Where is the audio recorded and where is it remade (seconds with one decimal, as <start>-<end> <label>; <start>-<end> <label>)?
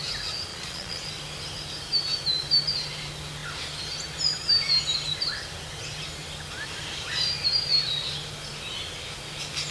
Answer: 0.0-0.5 recorded; 0.5-1.1 remade; 1.1-9.7 recorded